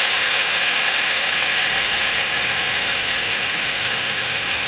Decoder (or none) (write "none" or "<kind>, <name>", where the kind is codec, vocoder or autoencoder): autoencoder, DAC-VAE